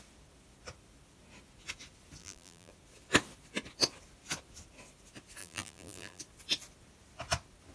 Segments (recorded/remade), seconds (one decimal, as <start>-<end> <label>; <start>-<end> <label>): 0.0-2.2 recorded; 2.2-2.7 remade; 2.7-5.4 recorded; 5.4-6.2 remade; 6.2-7.7 recorded